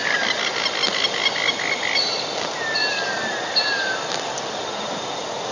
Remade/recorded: recorded